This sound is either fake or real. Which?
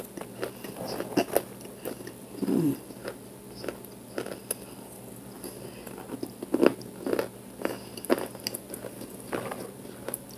real